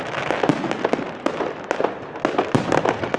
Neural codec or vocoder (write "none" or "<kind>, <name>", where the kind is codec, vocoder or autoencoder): none